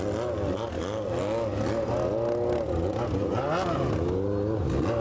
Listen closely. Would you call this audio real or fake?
real